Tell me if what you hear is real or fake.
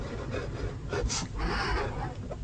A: real